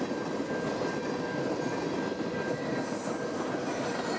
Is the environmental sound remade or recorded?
recorded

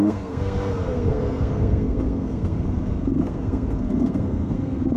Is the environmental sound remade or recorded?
remade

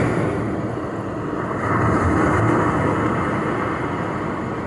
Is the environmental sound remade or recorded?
recorded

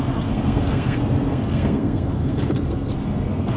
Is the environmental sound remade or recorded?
remade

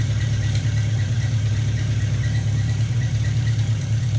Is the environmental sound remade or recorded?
remade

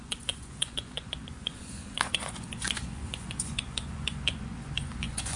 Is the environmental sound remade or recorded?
remade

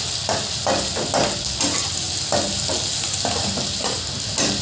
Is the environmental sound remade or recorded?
recorded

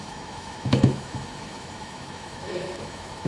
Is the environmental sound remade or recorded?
remade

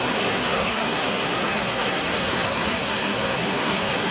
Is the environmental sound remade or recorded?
remade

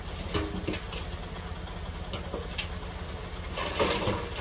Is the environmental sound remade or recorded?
recorded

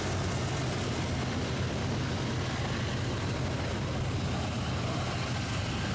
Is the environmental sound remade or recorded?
recorded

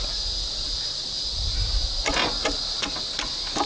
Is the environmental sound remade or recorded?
recorded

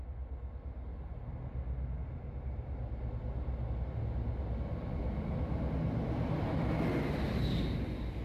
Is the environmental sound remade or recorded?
recorded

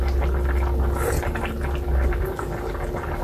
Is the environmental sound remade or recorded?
recorded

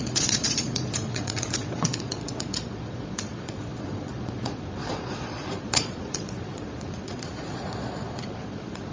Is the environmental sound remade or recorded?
remade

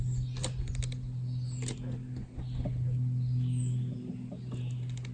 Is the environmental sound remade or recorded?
recorded